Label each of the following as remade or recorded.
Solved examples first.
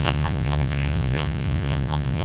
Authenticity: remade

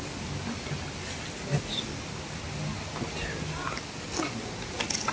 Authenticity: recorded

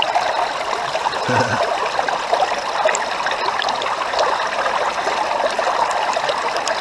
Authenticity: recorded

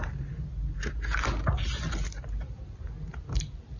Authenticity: recorded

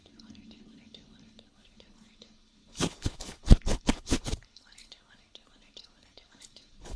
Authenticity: remade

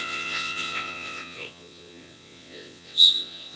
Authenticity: remade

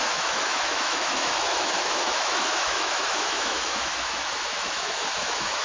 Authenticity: remade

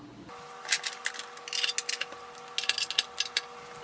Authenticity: recorded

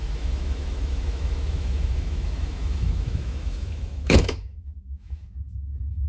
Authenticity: remade